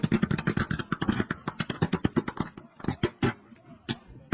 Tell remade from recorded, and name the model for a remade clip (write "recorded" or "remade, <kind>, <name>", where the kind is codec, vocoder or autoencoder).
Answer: recorded